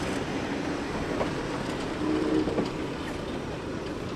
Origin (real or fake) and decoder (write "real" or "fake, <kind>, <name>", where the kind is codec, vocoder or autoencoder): real